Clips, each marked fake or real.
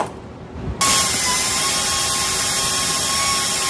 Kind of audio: real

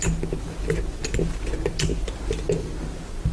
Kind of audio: real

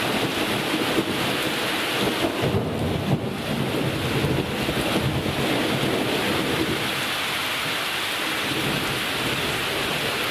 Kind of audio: real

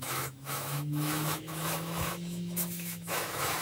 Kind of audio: fake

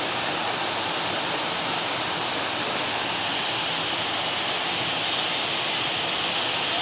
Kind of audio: real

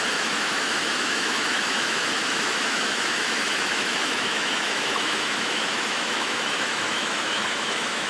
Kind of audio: fake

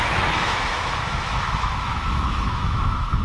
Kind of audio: fake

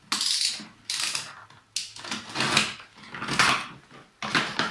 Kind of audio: real